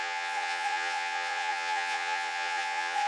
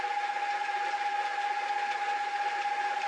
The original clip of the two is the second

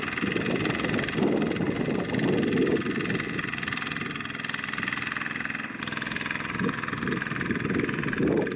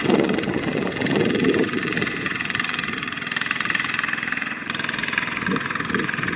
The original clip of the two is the first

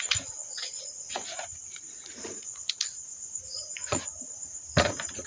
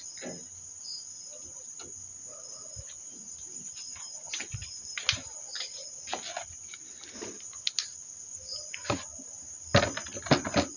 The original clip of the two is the second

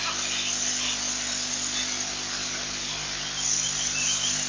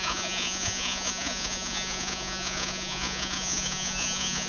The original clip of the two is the first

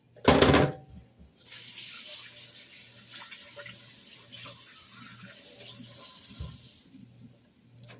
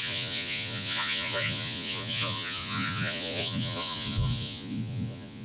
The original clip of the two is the first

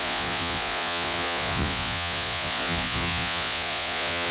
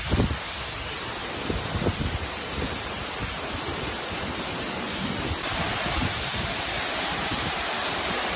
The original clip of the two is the second